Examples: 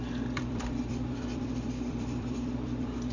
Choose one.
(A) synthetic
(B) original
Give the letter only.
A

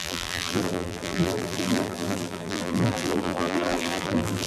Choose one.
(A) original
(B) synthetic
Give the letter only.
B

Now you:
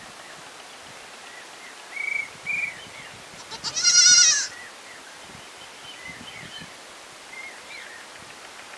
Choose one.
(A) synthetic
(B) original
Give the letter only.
B